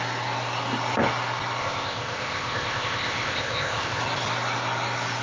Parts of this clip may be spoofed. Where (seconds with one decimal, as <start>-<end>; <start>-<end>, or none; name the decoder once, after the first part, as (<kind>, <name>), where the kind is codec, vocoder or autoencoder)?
1.6-4.0 (codec, ZipCodec)